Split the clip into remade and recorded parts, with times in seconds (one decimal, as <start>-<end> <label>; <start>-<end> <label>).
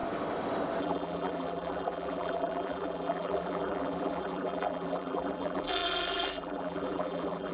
0.0-0.8 recorded; 0.8-7.5 remade